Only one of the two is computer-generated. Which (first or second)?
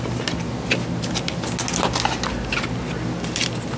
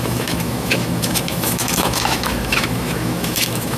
second